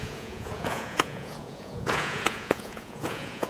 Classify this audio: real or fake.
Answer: fake